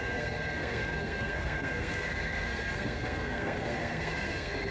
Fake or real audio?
fake